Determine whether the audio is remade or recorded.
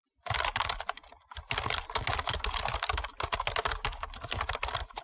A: recorded